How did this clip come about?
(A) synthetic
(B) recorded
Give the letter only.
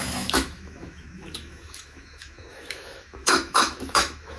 A